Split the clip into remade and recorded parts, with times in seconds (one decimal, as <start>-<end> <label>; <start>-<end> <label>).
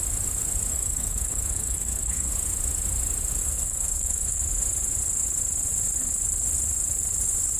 0.0-0.7 recorded; 0.7-2.3 remade; 2.3-3.4 recorded; 3.4-4.4 remade; 4.4-7.6 recorded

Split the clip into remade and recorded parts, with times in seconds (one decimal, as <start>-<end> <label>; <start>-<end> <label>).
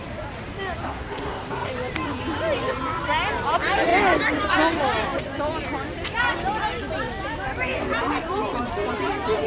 0.0-0.8 recorded; 0.8-1.7 remade; 1.7-9.5 recorded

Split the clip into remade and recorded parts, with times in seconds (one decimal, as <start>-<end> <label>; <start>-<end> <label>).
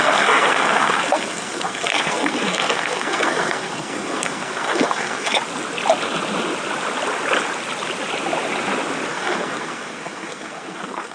0.0-5.4 remade; 5.4-9.1 recorded; 9.1-11.1 remade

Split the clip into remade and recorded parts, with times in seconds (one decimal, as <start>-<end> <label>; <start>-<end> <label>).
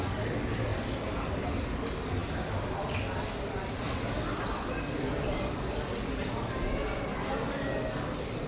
0.0-8.5 recorded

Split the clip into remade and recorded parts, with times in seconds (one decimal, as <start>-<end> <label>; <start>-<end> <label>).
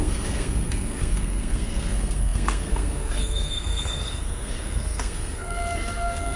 0.0-6.4 remade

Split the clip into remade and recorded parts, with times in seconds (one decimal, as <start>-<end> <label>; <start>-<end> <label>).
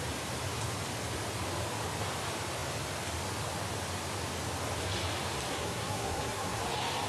0.0-5.5 recorded; 5.5-6.6 remade; 6.6-7.1 recorded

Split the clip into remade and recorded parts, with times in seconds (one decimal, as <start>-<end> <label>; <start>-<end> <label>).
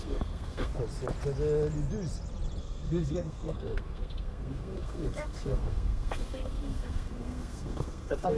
0.0-0.7 remade; 0.7-2.6 recorded; 2.6-8.4 remade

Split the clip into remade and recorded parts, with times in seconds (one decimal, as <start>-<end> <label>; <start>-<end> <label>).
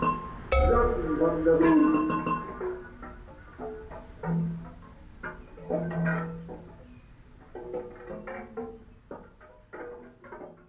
0.0-10.7 recorded